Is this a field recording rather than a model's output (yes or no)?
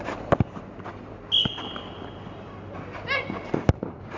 yes